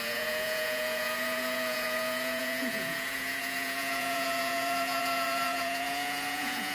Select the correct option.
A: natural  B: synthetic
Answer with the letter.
B